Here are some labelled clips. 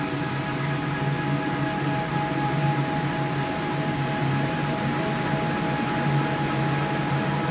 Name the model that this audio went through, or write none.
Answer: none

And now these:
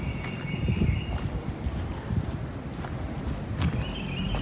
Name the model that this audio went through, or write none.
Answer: none